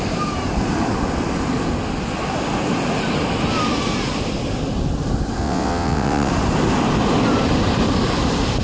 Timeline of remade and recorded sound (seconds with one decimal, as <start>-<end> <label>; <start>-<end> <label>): 0.0-5.4 recorded; 5.4-6.3 remade; 6.3-8.6 recorded